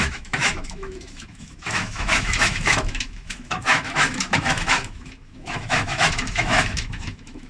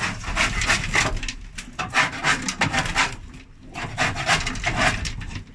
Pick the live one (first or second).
second